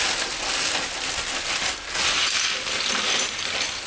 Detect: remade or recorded recorded